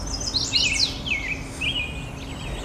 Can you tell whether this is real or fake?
real